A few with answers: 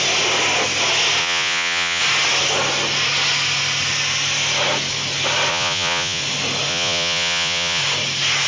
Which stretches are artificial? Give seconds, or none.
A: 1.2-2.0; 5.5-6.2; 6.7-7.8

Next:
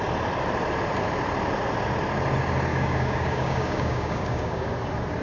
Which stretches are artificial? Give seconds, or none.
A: 2.7-4.7